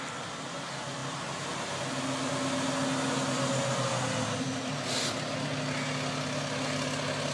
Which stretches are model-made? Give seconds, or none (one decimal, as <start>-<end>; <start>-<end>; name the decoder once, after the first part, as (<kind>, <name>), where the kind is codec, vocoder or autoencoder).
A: none